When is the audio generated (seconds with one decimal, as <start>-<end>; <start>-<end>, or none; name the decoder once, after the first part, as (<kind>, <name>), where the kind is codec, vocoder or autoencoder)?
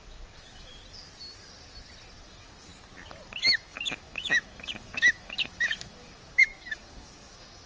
0.0-0.7 (autoencoder, DAC-VAE); 2.2-2.7; 3.3-7.7